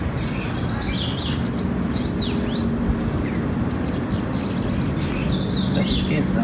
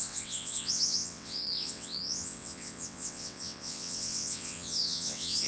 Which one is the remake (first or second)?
second